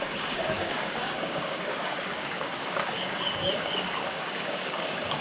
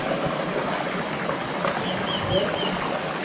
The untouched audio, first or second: second